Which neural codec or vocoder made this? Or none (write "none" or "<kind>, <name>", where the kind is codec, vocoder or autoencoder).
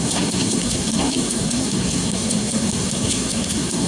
codec, SNAC